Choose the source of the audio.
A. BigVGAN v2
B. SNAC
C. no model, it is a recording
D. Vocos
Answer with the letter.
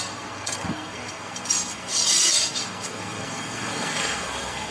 B